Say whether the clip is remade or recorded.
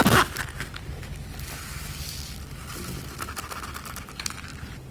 recorded